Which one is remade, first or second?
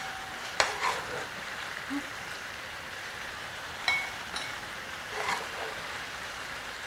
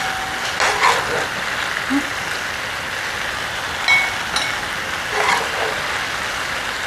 first